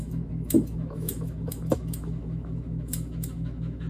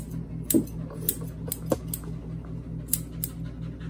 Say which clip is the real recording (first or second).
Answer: second